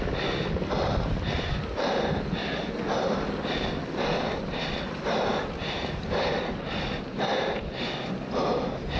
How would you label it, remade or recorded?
recorded